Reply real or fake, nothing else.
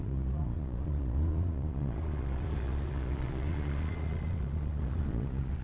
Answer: fake